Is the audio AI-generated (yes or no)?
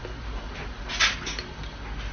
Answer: no